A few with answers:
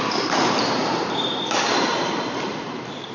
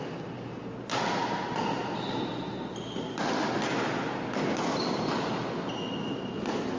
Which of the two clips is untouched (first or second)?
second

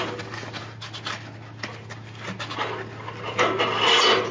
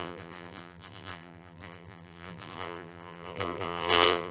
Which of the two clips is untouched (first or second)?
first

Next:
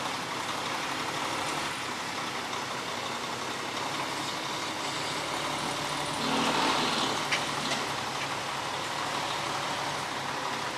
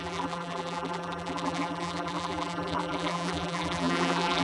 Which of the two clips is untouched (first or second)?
first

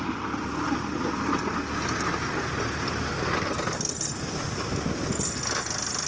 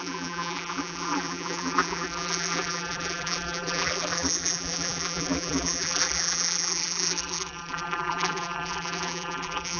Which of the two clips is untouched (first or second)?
first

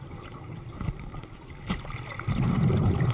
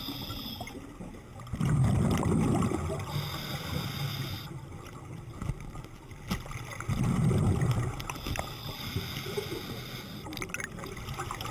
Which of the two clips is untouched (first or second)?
second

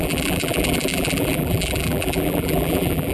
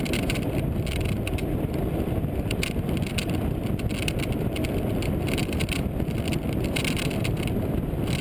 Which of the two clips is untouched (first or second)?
second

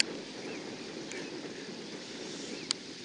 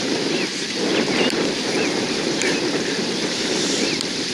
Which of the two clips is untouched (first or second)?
first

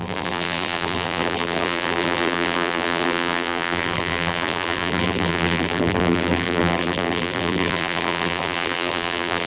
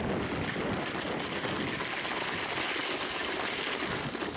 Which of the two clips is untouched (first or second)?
second